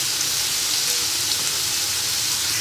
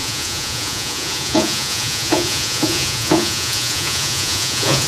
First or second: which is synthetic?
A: second